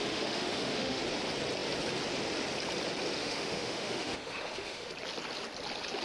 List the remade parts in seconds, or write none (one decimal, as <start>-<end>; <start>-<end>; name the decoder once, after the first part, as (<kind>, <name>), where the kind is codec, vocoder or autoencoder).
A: 0.0-1.0 (autoencoder, DAC-VAE); 3.2-4.9